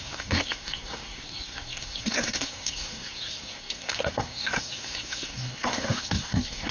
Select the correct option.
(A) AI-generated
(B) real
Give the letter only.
A